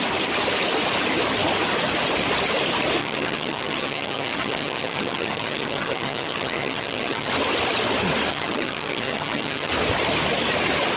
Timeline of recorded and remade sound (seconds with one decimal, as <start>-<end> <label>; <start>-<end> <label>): 0.0-3.0 recorded; 3.0-7.3 remade; 7.3-8.3 recorded; 8.3-9.7 remade; 9.7-11.0 recorded